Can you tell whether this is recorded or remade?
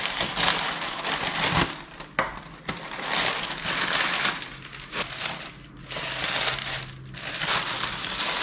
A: recorded